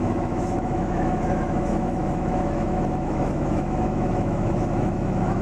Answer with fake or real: fake